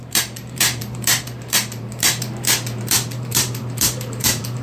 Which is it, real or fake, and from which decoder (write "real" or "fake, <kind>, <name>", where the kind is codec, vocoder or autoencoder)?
fake, vocoder, BigVGAN v2